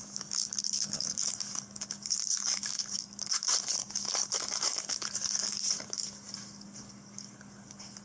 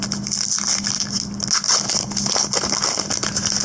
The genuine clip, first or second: second